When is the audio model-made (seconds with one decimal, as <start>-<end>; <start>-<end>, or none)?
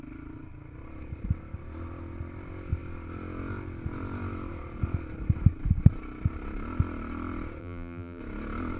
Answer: 7.6-8.2